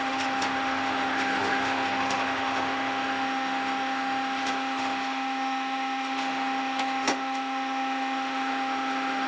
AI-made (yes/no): yes